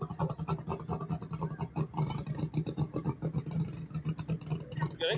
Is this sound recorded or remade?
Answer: recorded